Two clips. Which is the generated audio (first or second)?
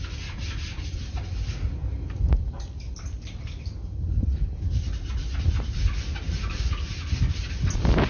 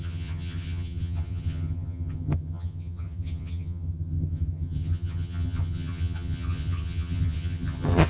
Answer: second